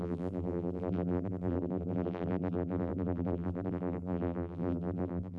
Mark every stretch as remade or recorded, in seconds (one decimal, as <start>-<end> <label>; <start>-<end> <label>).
0.0-5.4 remade